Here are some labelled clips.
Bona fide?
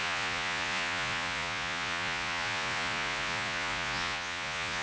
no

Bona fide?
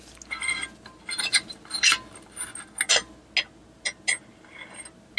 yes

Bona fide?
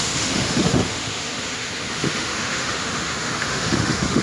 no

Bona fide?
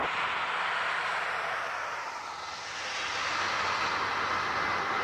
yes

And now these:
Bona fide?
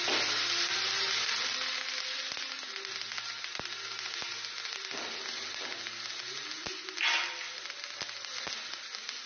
yes